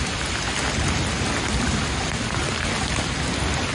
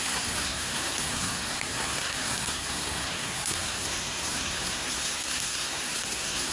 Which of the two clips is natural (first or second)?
first